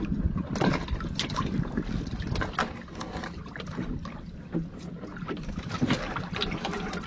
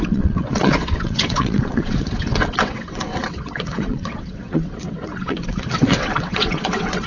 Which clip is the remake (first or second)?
second